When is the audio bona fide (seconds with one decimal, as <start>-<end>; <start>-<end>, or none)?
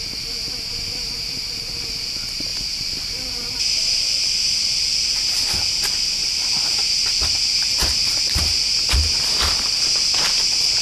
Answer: 0.0-6.2; 7.0-7.8; 9.2-10.8